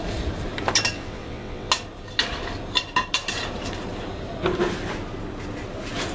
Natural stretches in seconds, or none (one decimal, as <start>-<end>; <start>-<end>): 0.0-0.9; 1.7-6.1